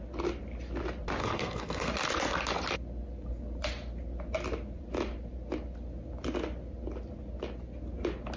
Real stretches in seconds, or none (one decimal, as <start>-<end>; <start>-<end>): 0.0-1.2; 1.9-8.4